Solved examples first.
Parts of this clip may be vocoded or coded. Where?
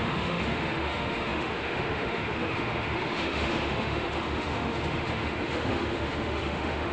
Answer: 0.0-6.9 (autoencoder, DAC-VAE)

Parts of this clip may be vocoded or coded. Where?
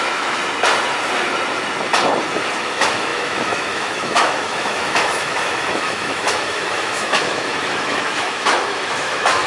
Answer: 0.0-0.4 (autoencoder, DAC-VAE); 2.6-9.5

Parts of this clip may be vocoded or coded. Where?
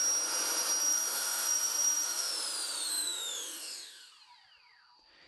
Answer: 0.8-2.3 (autoencoder, DAC-VAE); 2.9-4.1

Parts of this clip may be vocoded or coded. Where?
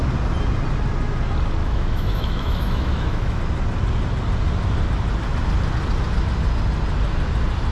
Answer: 1.6-3.4 (autoencoder, DAC-VAE)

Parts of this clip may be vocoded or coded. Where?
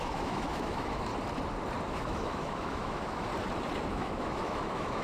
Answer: 0.0-1.1 (autoencoder, DAC-VAE); 1.9-3.3; 3.9-5.0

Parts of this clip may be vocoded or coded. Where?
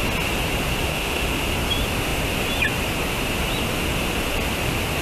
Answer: 0.9-1.4 (autoencoder, DAC-VAE)